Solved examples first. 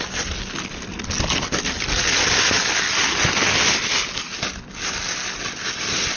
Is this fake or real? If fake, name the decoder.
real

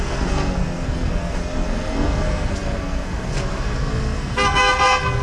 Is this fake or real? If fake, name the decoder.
fake, codec, SNAC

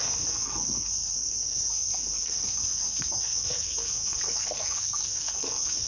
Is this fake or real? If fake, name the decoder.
fake, codec, SNAC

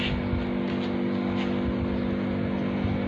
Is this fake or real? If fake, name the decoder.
real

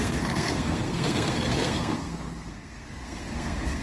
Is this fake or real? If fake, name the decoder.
fake, codec, SNAC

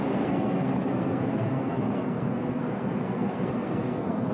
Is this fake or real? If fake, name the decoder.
fake, codec, SNAC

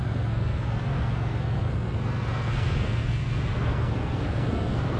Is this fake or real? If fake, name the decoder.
fake, codec, SNAC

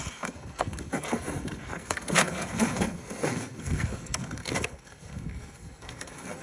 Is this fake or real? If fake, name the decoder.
fake, codec, SNAC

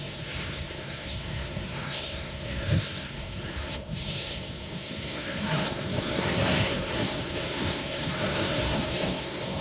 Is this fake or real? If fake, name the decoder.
fake, codec, SNAC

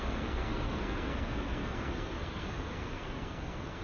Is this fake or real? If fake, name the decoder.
fake, codec, SNAC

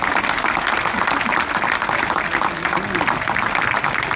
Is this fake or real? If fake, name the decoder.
real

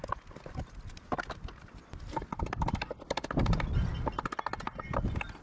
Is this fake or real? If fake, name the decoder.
real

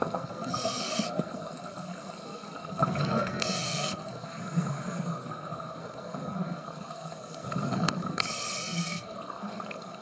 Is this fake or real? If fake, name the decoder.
fake, codec, SNAC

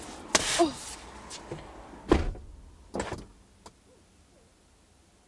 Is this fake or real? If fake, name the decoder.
real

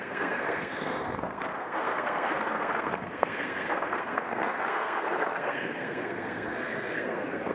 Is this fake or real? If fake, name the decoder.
fake, codec, SNAC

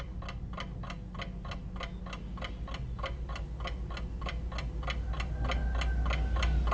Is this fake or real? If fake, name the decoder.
real